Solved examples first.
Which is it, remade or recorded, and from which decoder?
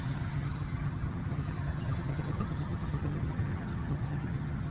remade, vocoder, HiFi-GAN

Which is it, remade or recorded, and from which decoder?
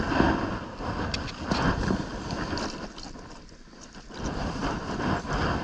recorded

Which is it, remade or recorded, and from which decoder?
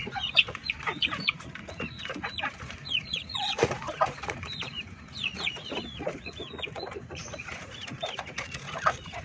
remade, vocoder, Vocos